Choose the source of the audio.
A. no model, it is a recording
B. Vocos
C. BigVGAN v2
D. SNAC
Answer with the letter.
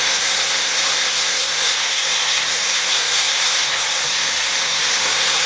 D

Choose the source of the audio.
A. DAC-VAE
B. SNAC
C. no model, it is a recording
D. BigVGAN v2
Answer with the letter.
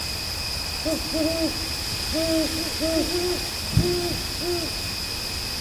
C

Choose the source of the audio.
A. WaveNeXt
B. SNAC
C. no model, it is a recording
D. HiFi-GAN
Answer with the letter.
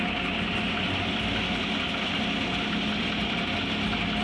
C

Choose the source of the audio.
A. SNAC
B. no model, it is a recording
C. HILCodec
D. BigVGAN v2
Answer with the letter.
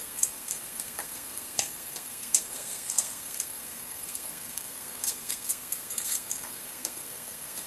A